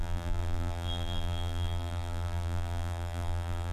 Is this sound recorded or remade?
remade